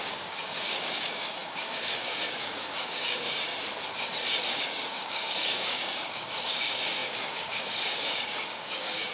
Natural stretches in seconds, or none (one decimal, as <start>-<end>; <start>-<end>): 3.5-4.4